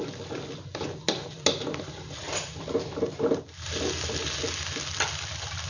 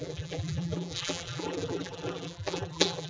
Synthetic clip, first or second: second